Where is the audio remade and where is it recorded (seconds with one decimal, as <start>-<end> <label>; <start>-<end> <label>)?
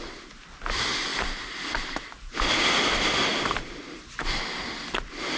0.0-5.4 recorded